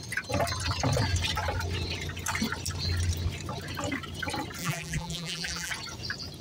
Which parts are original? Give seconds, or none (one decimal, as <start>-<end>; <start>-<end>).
0.0-4.6; 5.7-6.4